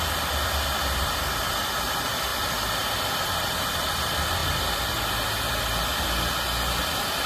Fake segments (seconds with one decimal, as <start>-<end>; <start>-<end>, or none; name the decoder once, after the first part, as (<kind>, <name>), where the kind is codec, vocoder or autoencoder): 0.0-5.9 (vocoder, BigVGAN v2); 6.8-7.3